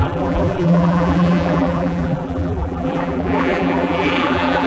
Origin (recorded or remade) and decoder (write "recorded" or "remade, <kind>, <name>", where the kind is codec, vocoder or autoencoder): remade, vocoder, BigVGAN v2